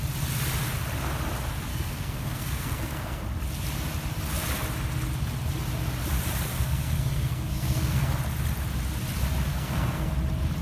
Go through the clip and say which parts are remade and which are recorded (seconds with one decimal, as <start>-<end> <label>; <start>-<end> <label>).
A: 0.0-1.7 recorded; 1.7-3.2 remade; 3.2-6.5 recorded; 6.5-8.1 remade; 8.1-9.5 recorded; 9.5-10.1 remade; 10.1-10.6 recorded